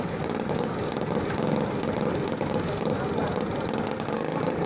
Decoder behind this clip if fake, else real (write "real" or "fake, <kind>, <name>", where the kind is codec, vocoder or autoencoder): real